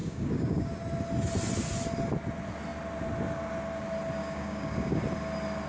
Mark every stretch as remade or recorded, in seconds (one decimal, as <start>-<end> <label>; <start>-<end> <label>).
0.0-0.7 remade; 0.7-4.2 recorded; 4.2-5.0 remade; 5.0-5.7 recorded

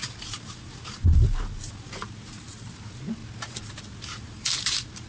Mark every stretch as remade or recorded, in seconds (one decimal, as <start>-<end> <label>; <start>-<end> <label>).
0.0-3.2 remade; 3.2-3.7 recorded; 3.7-5.1 remade

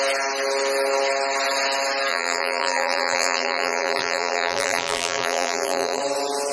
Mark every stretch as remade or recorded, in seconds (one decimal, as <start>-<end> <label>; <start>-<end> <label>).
0.0-2.1 recorded; 2.1-6.0 remade; 6.0-6.5 recorded

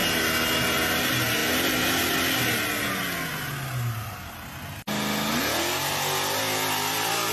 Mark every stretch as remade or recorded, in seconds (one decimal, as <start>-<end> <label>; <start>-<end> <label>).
0.0-7.3 recorded

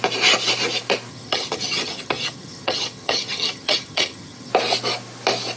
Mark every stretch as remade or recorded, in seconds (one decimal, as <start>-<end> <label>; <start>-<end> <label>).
0.0-1.1 recorded; 1.1-4.5 remade; 4.5-5.6 recorded